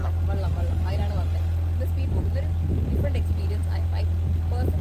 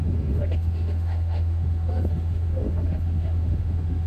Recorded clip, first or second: first